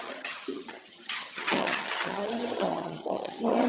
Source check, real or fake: fake